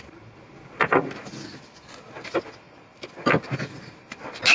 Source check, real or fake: real